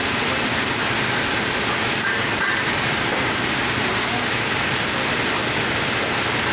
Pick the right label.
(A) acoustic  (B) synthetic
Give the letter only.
A